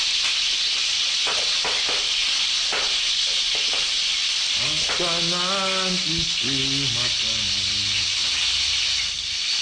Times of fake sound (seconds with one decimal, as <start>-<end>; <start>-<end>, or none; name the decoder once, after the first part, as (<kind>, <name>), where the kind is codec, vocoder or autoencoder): none